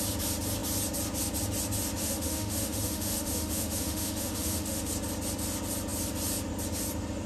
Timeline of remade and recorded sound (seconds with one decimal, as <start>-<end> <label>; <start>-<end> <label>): 0.0-2.0 recorded; 2.0-4.9 remade; 4.9-7.3 recorded